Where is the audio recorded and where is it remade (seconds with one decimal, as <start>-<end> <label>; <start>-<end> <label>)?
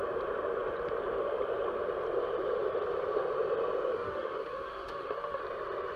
0.0-3.9 recorded; 3.9-5.4 remade; 5.4-6.0 recorded